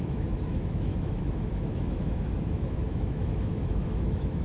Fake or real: fake